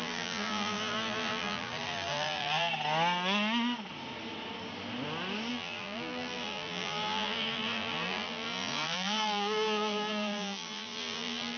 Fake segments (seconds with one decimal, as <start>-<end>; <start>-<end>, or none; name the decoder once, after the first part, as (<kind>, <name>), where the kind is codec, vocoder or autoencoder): 0.0-2.7 (vocoder, BigVGAN v2); 5.5-11.6